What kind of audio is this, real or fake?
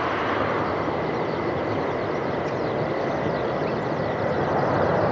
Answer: real